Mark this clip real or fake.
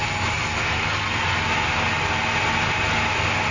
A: real